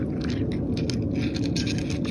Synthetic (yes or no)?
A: no